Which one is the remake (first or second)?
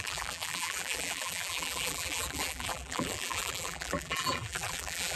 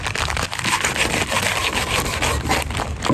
first